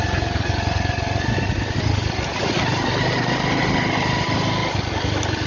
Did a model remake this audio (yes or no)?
no